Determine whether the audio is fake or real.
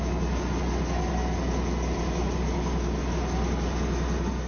real